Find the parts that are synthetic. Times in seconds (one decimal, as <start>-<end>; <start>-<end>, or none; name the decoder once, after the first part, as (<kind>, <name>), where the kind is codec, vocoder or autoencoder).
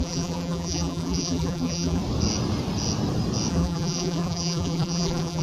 0.0-2.0 (vocoder, BigVGAN v2); 3.5-5.4